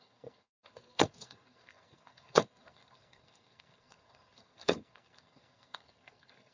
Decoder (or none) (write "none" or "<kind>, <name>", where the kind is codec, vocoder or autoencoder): codec, SNAC